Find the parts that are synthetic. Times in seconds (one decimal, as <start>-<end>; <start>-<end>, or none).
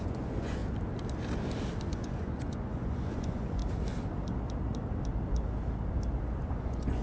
0.0-0.6; 1.9-3.6; 6.5-7.0